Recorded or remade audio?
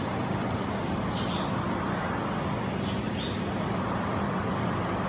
recorded